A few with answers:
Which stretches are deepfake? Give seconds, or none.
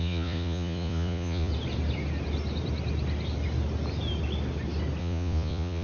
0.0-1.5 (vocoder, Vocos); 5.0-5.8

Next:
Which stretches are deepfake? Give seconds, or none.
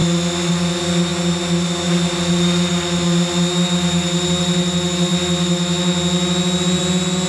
none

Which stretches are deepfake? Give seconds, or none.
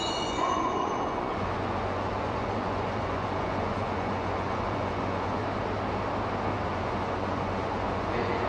0.0-5.4 (vocoder, Vocos); 6.7-8.5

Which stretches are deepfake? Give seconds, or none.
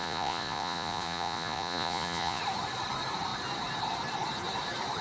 0.0-2.4 (vocoder, Vocos)